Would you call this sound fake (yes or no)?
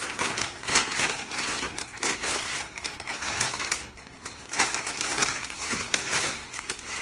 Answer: yes